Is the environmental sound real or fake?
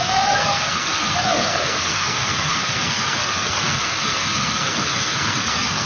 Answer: fake